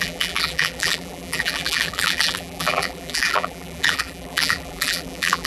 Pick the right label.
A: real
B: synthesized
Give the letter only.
B